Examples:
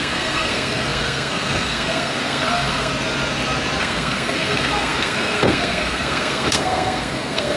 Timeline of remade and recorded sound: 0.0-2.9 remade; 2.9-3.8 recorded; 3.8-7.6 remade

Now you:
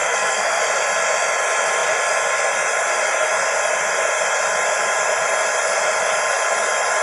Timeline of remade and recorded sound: 0.0-0.6 remade; 0.6-7.0 recorded

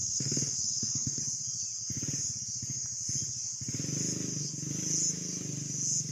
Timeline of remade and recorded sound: 0.0-1.2 remade; 1.2-6.1 recorded

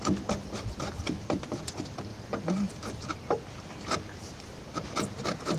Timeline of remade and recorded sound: 0.0-0.4 recorded; 0.4-1.6 remade; 1.6-2.1 recorded; 2.1-5.6 remade

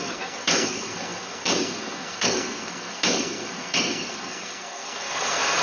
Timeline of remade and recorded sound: 0.0-5.6 remade

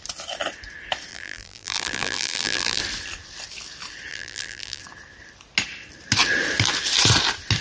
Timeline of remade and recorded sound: 0.0-1.1 recorded; 1.1-2.8 remade; 2.8-4.1 recorded; 4.1-4.8 remade; 4.8-7.6 recorded

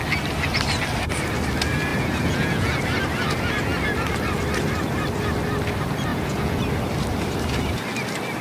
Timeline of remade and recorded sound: 0.0-1.9 recorded; 1.9-2.8 remade; 2.8-6.1 recorded; 6.1-6.6 remade; 6.6-8.4 recorded

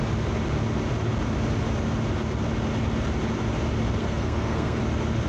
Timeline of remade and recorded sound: 0.0-4.0 recorded; 4.0-4.8 remade; 4.8-5.3 recorded